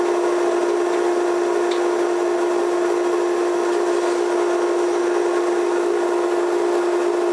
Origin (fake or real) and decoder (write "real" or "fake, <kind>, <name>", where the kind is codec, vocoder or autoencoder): real